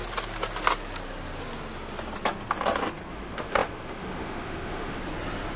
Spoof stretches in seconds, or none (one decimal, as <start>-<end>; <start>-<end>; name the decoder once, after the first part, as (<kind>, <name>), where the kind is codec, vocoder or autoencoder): 3.1-5.0 (autoencoder, DAC-VAE)